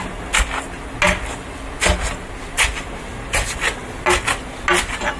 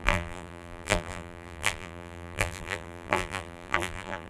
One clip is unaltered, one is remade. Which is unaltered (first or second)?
first